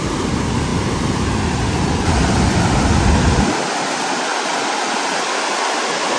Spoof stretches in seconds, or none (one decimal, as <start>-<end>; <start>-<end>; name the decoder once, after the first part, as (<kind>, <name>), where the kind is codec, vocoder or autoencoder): none